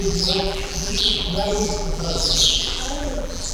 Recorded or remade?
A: remade